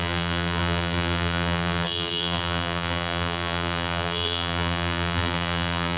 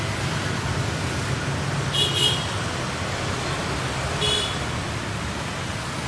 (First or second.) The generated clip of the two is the first